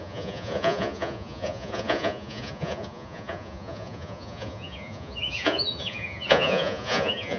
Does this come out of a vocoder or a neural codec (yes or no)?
yes